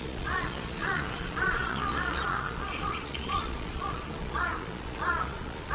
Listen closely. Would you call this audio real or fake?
fake